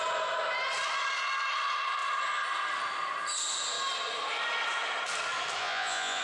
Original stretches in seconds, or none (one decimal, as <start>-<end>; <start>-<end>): 0.0-5.6